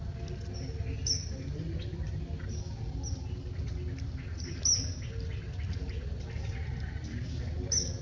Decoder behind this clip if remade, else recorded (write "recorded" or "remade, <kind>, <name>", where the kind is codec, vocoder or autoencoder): recorded